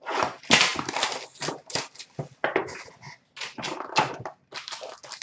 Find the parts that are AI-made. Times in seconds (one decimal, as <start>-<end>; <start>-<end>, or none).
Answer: none